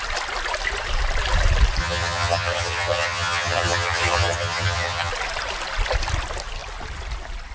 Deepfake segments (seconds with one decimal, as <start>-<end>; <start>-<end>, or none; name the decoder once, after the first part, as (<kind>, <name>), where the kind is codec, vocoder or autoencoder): 1.8-5.1 (vocoder, HiFi-GAN)